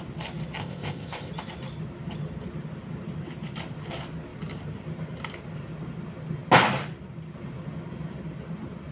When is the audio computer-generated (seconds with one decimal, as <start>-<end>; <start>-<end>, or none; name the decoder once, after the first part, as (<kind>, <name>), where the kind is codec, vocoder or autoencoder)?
0.6-1.3 (codec, ZipCodec)